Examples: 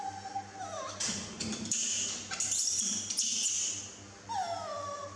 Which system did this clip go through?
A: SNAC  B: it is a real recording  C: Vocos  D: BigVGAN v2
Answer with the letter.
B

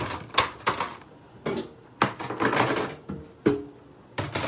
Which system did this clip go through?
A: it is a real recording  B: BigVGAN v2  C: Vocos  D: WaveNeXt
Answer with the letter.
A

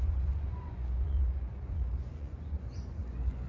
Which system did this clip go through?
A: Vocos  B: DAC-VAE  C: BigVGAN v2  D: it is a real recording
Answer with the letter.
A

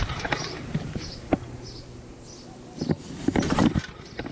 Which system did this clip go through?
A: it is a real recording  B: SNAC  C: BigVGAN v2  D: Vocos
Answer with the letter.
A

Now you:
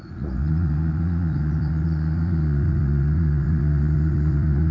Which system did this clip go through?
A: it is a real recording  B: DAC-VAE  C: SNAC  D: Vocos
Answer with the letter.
D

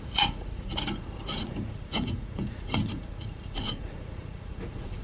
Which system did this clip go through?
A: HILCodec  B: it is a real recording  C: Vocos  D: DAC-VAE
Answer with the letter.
C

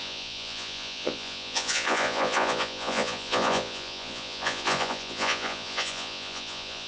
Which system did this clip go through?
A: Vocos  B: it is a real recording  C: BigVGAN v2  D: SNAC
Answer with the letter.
A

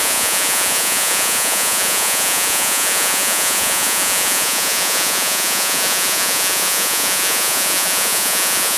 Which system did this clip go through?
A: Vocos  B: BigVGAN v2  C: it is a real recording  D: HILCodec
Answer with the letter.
A